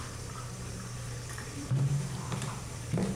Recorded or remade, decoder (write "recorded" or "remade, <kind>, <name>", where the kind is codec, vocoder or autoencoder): remade, vocoder, BigVGAN v2